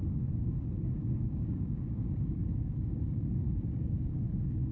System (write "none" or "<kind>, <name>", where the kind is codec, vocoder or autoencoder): codec, DAC